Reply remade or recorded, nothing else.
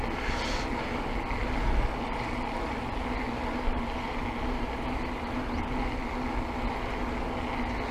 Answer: recorded